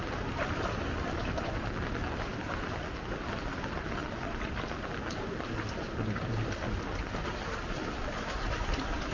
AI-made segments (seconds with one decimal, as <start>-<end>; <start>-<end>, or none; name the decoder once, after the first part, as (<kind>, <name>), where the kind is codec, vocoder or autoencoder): none